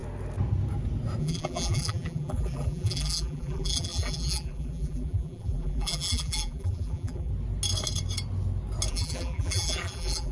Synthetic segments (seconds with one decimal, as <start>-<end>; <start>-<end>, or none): 1.2-7.3; 8.9-10.3